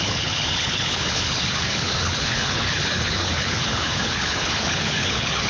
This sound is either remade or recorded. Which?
remade